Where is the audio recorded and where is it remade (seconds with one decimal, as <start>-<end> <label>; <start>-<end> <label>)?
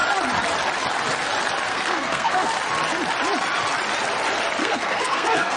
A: 0.0-1.7 recorded; 1.7-2.5 remade; 2.5-4.6 recorded; 4.6-5.6 remade